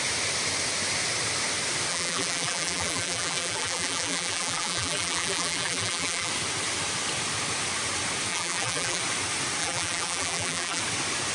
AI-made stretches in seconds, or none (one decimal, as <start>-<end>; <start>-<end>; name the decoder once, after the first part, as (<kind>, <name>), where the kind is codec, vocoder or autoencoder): 1.9-6.3 (vocoder, BigVGAN v2); 8.3-9.0; 9.6-10.8